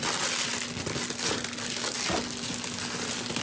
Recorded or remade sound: recorded